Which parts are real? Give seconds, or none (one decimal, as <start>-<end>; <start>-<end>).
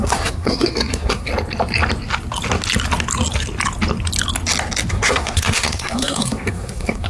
1.3-4.9